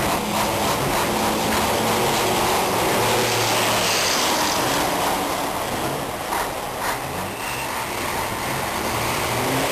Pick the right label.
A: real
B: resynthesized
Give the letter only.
A